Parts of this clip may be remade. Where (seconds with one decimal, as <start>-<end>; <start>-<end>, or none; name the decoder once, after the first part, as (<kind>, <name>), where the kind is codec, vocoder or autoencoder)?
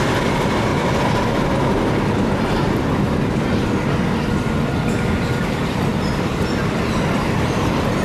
0.0-0.7 (vocoder, BigVGAN v2); 5.0-8.0